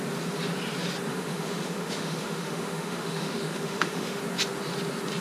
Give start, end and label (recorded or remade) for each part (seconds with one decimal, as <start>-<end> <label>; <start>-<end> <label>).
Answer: 0.0-1.1 recorded; 1.1-4.2 remade; 4.2-5.2 recorded